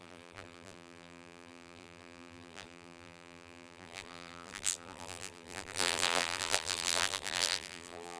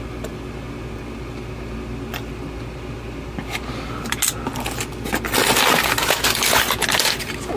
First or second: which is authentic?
second